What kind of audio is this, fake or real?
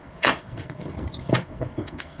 fake